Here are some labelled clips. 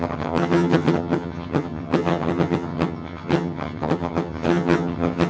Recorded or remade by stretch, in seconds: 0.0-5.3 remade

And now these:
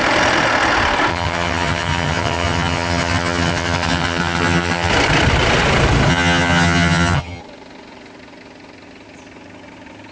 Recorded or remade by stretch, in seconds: 0.0-1.1 recorded; 1.1-4.9 remade; 4.9-6.1 recorded; 6.1-7.4 remade; 7.4-10.1 recorded

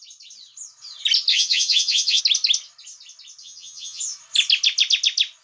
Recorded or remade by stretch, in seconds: 0.0-1.3 recorded; 1.3-2.2 remade; 2.2-3.4 recorded; 3.4-4.0 remade; 4.0-5.4 recorded

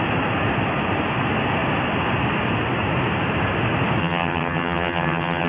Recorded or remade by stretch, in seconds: 0.0-4.0 recorded; 4.0-5.5 remade

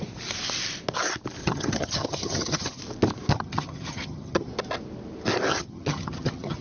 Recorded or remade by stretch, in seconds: 0.0-1.4 recorded; 1.4-2.8 remade; 2.8-3.3 recorded; 3.3-4.5 remade; 4.5-5.5 recorded; 5.5-6.6 remade

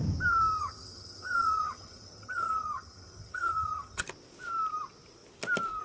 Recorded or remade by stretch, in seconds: 0.0-0.6 recorded; 0.6-4.0 remade; 4.0-5.8 recorded

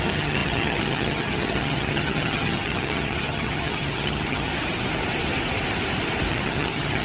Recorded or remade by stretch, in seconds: 0.0-4.5 remade; 4.5-6.3 recorded; 6.3-7.0 remade

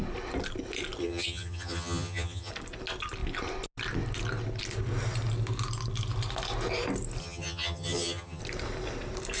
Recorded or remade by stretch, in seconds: 0.0-1.0 recorded; 1.0-2.5 remade; 2.5-7.2 recorded; 7.2-8.4 remade; 8.4-9.4 recorded